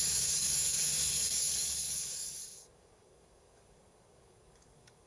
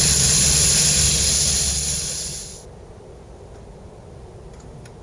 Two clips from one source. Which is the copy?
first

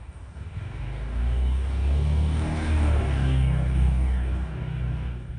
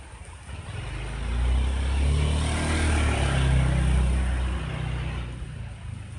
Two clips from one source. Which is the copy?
first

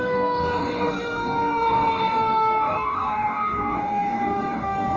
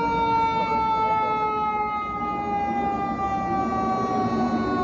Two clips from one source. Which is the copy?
first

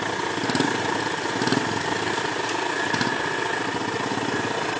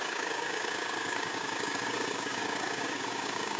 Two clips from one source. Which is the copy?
second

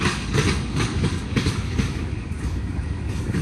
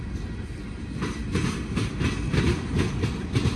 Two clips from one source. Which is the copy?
first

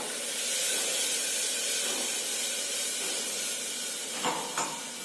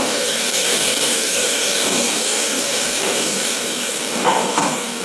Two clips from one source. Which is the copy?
second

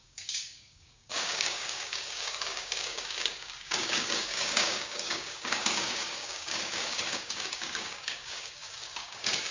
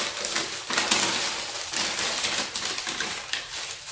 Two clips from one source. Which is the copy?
first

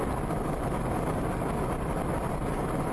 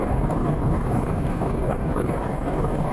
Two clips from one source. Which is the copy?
second